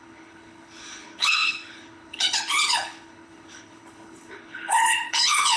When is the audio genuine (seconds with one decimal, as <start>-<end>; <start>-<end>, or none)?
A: none